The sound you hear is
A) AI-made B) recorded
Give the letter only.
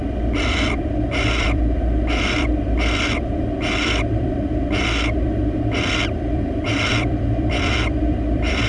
A